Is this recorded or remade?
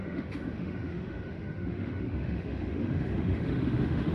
remade